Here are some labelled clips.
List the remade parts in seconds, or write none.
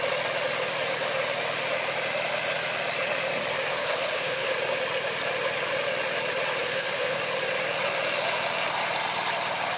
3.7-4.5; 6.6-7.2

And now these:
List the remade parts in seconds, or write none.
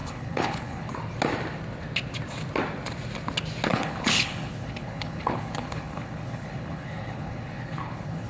0.0-0.9; 3.7-8.3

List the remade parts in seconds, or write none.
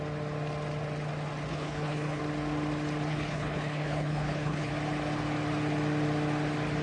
1.5-2.2; 3.1-4.7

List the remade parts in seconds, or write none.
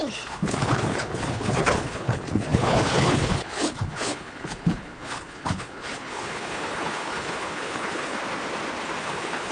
0.0-8.2; 9.0-9.5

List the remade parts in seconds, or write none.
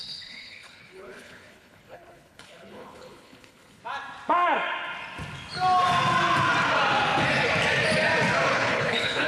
0.0-3.8; 8.5-9.3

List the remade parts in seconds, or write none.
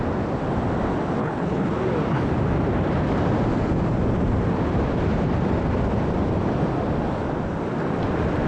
1.2-1.7